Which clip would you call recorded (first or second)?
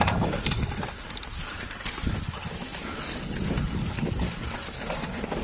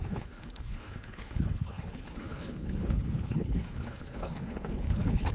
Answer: first